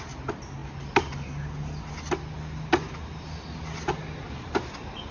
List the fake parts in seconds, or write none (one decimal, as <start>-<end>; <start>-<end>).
none